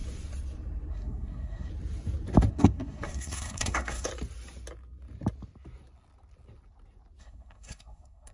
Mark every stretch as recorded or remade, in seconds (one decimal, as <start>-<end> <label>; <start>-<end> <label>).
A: 0.0-0.9 recorded; 0.9-1.7 remade; 1.7-2.5 recorded; 2.5-4.1 remade; 4.1-7.2 recorded; 7.2-8.3 remade